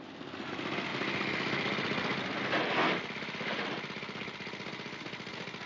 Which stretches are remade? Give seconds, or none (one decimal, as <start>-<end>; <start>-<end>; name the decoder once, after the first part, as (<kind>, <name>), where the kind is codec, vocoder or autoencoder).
none